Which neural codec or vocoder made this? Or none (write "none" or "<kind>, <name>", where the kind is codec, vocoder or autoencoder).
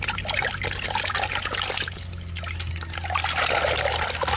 none